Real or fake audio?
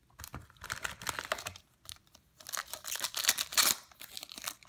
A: real